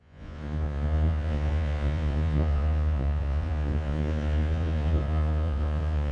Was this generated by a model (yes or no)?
yes